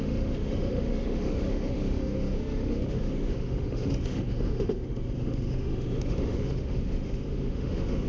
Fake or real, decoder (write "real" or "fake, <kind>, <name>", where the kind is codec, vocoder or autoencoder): fake, autoencoder, DAC-VAE